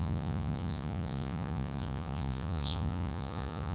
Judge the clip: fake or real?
fake